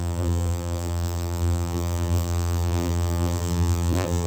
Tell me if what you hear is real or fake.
fake